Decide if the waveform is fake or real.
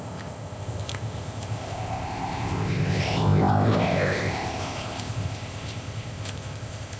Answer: fake